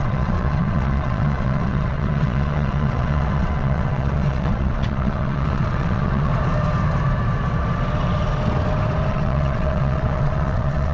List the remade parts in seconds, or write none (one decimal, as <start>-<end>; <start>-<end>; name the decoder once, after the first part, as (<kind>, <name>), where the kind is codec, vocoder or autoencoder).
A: 0.0-6.3 (vocoder, WaveNeXt); 9.1-10.9